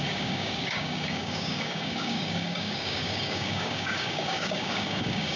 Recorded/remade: remade